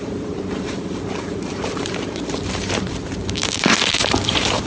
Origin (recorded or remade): remade